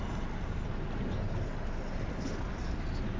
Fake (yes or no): no